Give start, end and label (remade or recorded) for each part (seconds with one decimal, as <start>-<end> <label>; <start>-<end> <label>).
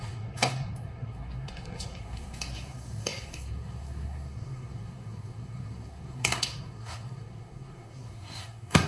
0.0-8.9 remade